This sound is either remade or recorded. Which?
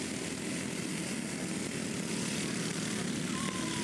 recorded